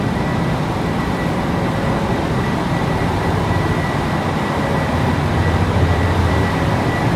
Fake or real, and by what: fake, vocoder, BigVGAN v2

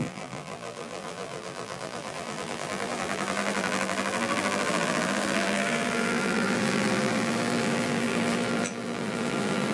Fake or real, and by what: fake, vocoder, BigVGAN v2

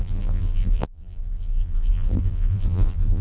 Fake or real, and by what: fake, vocoder, BigVGAN v2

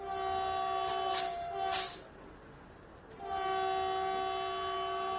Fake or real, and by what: real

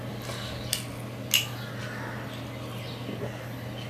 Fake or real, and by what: real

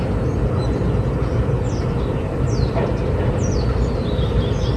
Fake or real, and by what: real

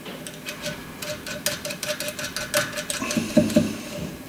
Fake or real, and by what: real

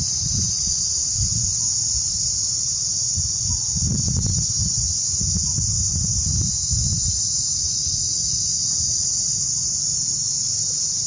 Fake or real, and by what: fake, vocoder, BigVGAN v2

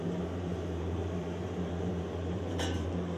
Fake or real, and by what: fake, vocoder, BigVGAN v2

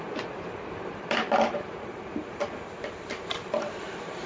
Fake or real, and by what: fake, vocoder, BigVGAN v2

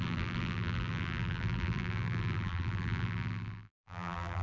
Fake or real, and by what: fake, vocoder, BigVGAN v2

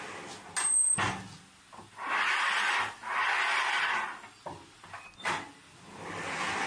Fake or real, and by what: real